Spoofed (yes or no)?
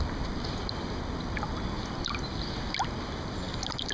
no